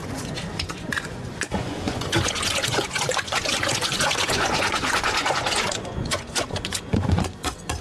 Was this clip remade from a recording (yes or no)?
yes